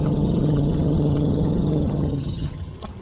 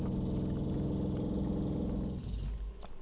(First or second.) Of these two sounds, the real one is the second